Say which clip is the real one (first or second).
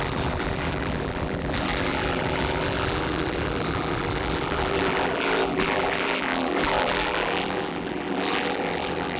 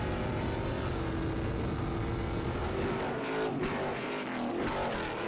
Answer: second